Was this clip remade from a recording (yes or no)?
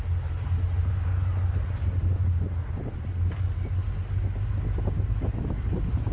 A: no